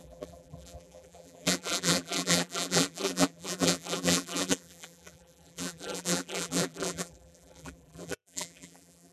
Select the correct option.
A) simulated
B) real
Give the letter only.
A